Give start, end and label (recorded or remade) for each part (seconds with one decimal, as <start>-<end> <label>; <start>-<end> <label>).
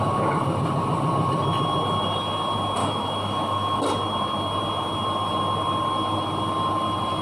0.0-2.8 recorded; 2.8-3.8 remade; 3.8-7.2 recorded